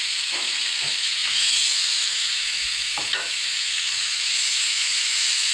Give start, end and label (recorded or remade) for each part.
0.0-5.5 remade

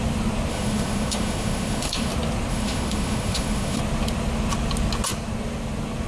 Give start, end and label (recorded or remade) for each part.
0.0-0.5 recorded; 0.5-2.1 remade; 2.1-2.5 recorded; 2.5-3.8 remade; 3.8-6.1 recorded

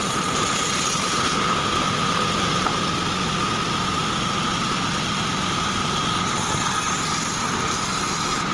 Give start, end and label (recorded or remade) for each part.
0.0-8.5 recorded

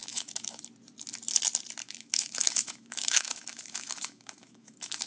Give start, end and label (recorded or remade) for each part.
0.0-0.6 remade; 0.6-1.8 recorded; 1.8-5.1 remade

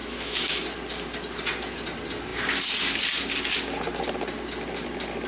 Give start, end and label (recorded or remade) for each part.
0.0-0.6 remade; 0.6-5.3 recorded